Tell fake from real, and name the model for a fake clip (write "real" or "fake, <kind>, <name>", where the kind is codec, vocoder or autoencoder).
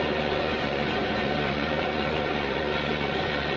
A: fake, vocoder, Vocos